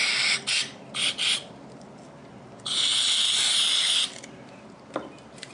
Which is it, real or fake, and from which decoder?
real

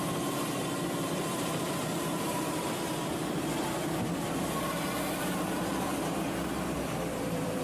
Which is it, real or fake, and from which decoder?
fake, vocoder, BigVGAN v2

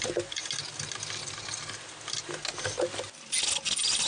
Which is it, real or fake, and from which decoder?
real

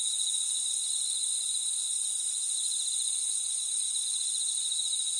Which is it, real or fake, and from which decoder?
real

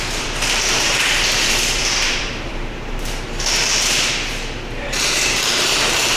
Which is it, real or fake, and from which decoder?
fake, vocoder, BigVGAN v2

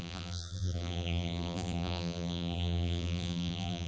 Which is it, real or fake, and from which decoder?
fake, vocoder, BigVGAN v2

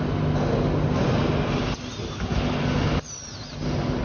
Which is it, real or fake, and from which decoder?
real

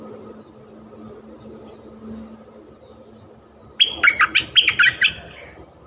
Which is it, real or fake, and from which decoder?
real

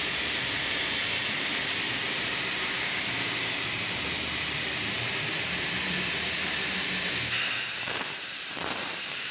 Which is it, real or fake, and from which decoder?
fake, vocoder, BigVGAN v2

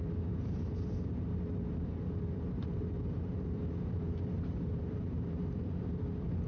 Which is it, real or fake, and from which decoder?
fake, vocoder, BigVGAN v2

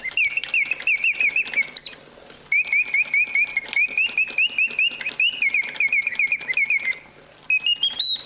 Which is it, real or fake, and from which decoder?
real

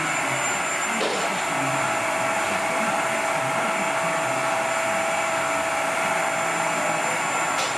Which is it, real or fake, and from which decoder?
real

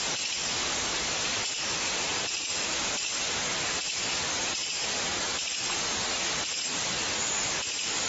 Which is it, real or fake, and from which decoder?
fake, vocoder, BigVGAN v2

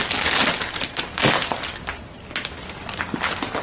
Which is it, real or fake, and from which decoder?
real